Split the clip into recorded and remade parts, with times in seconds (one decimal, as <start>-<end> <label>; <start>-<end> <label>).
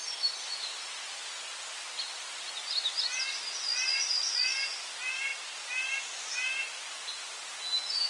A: 0.0-8.1 recorded